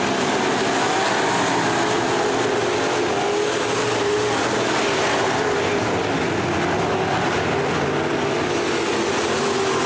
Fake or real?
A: real